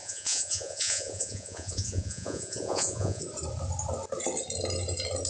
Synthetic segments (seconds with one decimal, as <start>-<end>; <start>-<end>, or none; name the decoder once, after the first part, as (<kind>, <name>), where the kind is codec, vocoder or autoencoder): 0.0-3.2 (vocoder, Vocos)